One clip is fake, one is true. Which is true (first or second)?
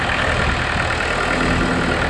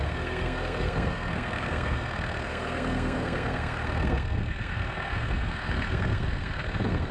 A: first